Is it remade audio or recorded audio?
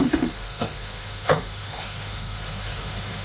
remade